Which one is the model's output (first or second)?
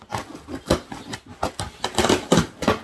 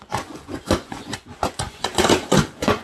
second